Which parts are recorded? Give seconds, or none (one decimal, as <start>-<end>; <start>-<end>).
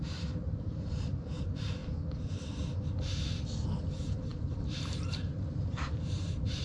1.8-3.8